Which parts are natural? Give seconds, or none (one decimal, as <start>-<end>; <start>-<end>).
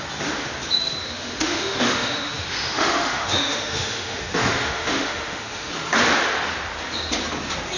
0.0-1.0; 5.7-7.8